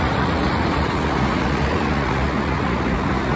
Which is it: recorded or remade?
remade